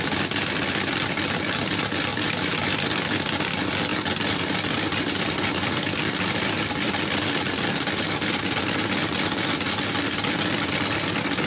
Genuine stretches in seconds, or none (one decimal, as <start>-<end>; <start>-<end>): 0.0-2.1; 2.8-11.5